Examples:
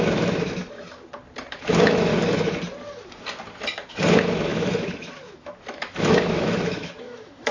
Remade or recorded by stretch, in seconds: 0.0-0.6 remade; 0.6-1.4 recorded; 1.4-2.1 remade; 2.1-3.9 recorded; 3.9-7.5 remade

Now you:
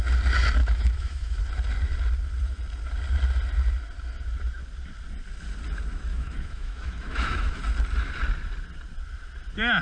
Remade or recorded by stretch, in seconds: 0.0-0.6 recorded; 0.6-1.4 remade; 1.4-6.1 recorded; 6.1-7.6 remade; 7.6-9.8 recorded